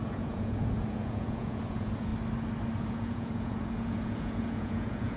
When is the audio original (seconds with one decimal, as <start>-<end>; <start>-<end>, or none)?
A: 2.1-2.8